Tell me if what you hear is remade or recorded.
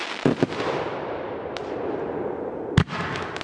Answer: recorded